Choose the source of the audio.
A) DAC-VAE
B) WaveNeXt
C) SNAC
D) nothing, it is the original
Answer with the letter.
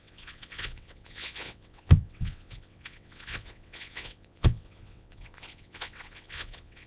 B